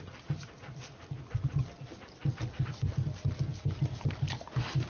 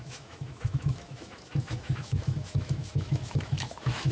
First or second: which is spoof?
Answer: second